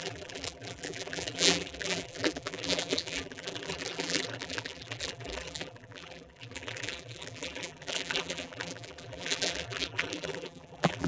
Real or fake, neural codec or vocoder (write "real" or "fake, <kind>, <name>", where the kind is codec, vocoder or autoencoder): fake, vocoder, BigVGAN v2